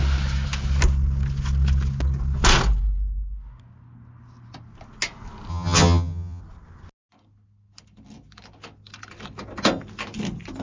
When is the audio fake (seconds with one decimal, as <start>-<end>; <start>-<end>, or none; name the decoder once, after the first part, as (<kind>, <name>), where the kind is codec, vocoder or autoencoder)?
5.5-6.4 (vocoder, HiFi-GAN)